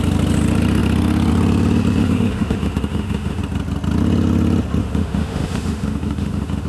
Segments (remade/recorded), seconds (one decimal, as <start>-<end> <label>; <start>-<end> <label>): 0.0-2.0 recorded; 2.0-3.4 remade; 3.4-4.8 recorded; 4.8-6.7 remade